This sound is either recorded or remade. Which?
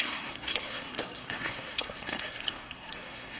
remade